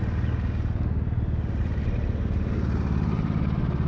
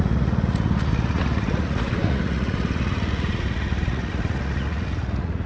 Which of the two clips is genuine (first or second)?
first